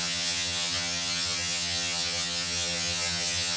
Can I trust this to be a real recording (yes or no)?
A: no